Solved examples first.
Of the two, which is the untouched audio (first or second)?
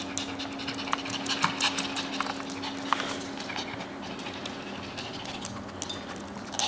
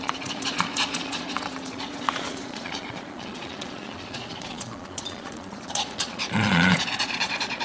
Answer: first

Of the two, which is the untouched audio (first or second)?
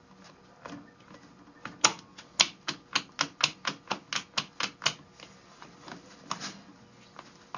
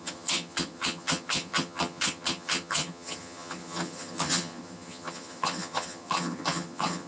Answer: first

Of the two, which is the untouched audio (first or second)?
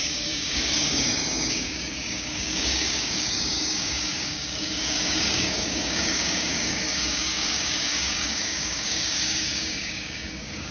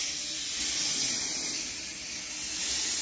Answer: second